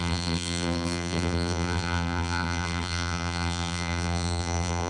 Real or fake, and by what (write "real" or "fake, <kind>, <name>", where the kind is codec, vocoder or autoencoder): fake, vocoder, BigVGAN v2